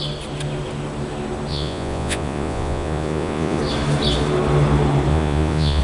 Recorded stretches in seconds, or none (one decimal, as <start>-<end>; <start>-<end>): 0.0-1.5; 3.6-5.1